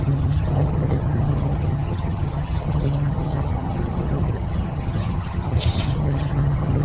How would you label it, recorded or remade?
remade